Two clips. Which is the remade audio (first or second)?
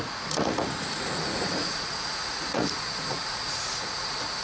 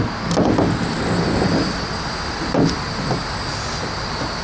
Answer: first